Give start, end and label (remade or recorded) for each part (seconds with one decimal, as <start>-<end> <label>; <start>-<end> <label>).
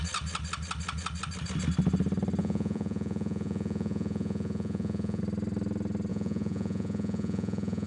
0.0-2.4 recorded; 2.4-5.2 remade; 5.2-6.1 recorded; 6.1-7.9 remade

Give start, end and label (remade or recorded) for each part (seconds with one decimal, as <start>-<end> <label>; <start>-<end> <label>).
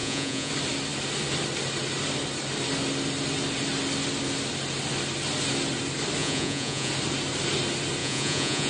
0.0-0.5 remade; 0.5-6.2 recorded; 6.2-6.9 remade; 6.9-8.0 recorded; 8.0-8.7 remade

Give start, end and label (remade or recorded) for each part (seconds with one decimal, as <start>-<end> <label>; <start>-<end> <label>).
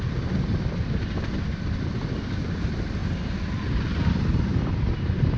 0.0-3.0 recorded; 3.0-4.7 remade; 4.7-5.4 recorded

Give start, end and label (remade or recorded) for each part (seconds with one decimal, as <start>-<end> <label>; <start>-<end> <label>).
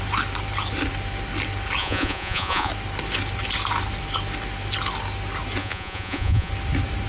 0.0-1.8 recorded; 1.8-2.7 remade; 2.7-5.6 recorded; 5.6-6.5 remade; 6.5-7.1 recorded